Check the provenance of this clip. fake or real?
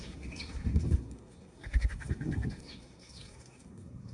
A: fake